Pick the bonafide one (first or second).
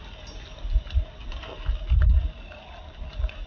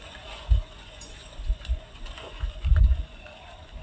first